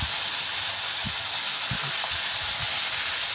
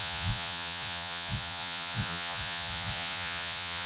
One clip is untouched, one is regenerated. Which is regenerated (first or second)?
second